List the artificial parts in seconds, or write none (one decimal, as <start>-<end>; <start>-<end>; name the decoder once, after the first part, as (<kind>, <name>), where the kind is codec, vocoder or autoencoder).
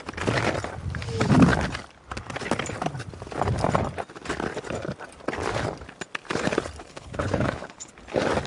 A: 6.8-7.9 (codec, HILCodec)